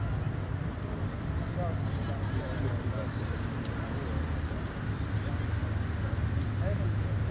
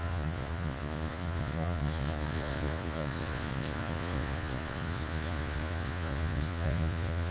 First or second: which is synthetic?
second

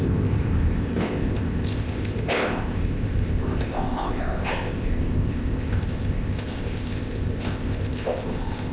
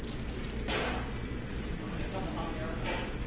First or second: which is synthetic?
first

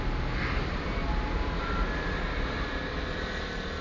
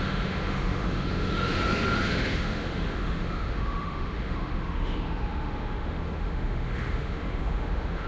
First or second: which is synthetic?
second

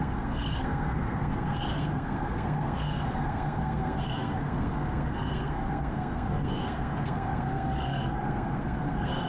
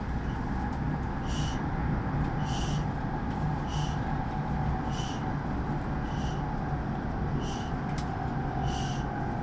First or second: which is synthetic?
first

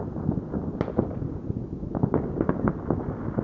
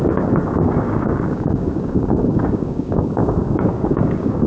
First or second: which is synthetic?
second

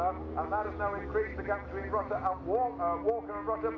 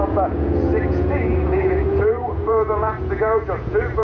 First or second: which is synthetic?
second